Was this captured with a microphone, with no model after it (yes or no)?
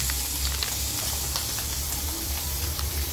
yes